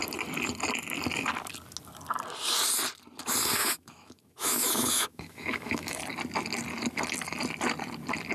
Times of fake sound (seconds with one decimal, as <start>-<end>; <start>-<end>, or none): 3.6-6.0